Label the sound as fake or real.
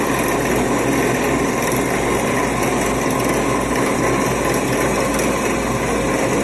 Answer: real